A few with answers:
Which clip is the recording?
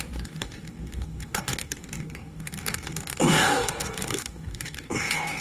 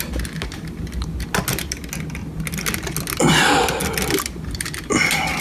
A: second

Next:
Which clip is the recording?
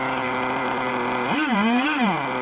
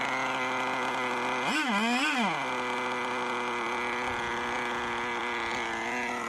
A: second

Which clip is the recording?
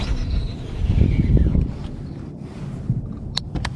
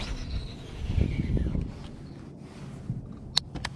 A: second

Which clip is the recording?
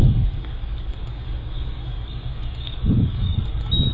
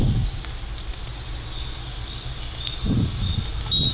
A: second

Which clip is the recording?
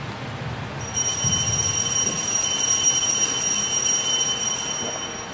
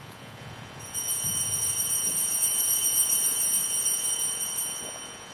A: first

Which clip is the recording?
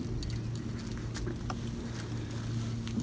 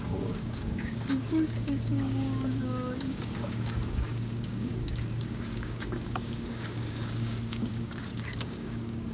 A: first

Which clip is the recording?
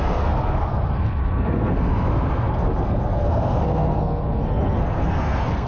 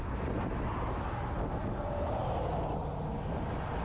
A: second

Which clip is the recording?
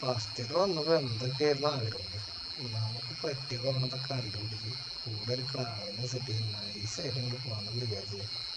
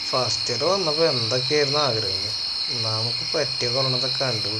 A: second